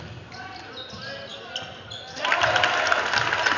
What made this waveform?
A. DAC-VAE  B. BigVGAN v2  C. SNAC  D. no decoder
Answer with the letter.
D